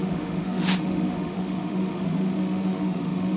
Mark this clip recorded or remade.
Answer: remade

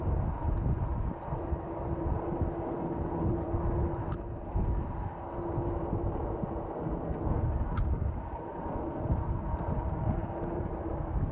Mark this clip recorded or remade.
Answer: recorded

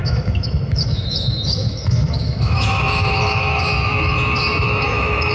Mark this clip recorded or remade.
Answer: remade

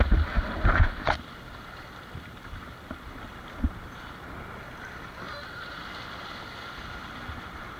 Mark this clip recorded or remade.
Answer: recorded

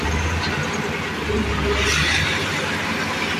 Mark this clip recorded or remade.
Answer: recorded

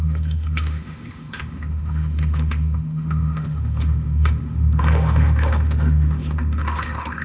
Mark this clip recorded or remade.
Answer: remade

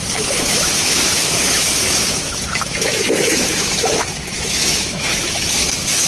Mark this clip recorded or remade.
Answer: remade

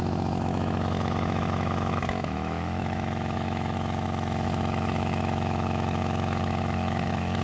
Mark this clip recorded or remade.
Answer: remade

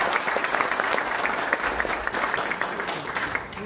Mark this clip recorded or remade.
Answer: recorded